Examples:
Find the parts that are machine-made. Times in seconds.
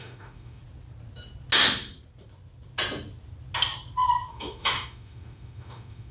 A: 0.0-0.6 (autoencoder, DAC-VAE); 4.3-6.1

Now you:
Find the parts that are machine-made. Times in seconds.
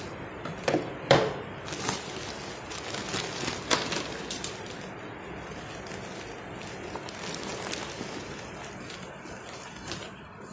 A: none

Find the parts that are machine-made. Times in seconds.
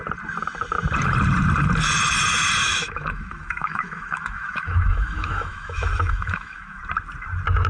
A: 2.6-6.8 (autoencoder, DAC-VAE)